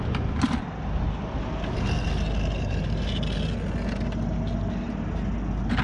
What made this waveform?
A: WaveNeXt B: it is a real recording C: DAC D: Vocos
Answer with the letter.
B